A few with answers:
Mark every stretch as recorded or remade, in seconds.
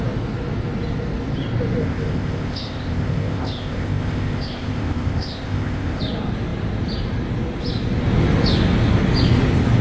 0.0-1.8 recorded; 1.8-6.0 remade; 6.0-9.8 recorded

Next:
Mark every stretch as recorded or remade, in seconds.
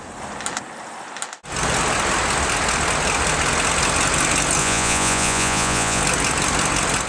0.0-4.6 recorded; 4.6-6.0 remade; 6.0-7.1 recorded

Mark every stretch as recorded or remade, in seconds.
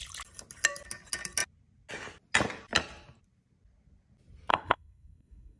0.0-4.5 recorded; 4.5-5.6 remade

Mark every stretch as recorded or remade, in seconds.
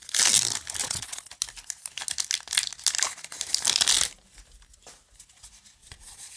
0.0-0.8 recorded; 0.8-1.3 remade; 1.3-5.8 recorded; 5.8-6.4 remade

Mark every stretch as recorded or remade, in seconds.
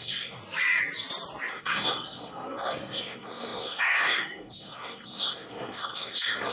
0.0-0.4 remade; 0.4-1.5 recorded; 1.5-6.5 remade